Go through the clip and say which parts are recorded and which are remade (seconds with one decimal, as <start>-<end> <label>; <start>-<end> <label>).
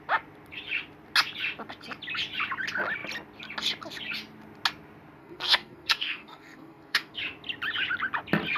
0.0-5.2 recorded; 5.2-7.2 remade; 7.2-8.6 recorded